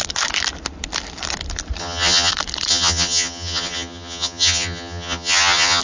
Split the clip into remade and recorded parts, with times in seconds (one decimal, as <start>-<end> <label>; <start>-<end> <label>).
0.0-1.8 recorded; 1.8-2.3 remade; 2.3-2.7 recorded; 2.7-5.8 remade